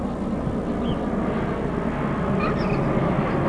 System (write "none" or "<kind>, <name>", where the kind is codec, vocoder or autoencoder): none